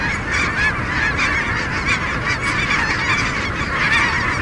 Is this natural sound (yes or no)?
yes